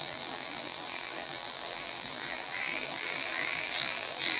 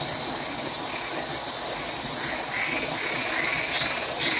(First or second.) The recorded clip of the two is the second